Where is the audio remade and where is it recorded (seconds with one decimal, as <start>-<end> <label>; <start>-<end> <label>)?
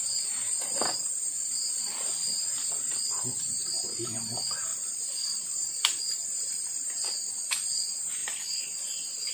0.0-1.2 recorded; 1.2-1.9 remade; 1.9-4.7 recorded; 4.7-6.5 remade; 6.5-9.3 recorded